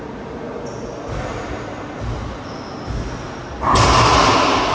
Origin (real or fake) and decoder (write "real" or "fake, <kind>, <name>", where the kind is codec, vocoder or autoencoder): real